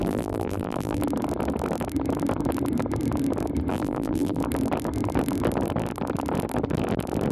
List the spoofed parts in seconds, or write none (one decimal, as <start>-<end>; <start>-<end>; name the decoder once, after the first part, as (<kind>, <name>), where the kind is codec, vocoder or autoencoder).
0.0-1.0 (vocoder, BigVGAN v2); 3.7-4.4